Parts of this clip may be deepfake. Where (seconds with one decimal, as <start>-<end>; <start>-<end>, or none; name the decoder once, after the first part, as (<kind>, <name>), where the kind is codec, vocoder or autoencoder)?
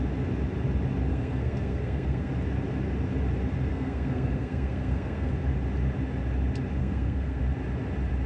1.1-2.3 (codec, SNAC); 3.7-5.3; 6.8-7.4